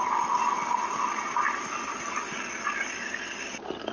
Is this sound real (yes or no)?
yes